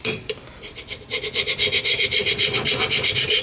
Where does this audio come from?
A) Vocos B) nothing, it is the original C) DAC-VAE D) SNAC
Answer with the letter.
B